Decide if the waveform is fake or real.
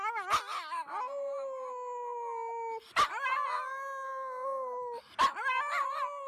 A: real